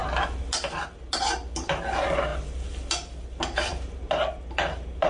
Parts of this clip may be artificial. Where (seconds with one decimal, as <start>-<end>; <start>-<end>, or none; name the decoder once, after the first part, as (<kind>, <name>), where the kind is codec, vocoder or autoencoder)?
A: none